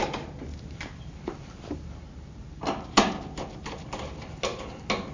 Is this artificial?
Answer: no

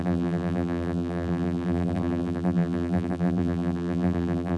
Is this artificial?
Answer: yes